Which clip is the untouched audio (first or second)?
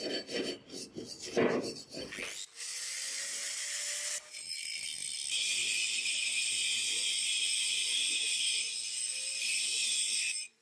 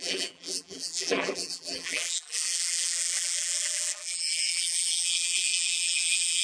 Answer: first